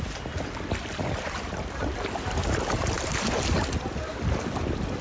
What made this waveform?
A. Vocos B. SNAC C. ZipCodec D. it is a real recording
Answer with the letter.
D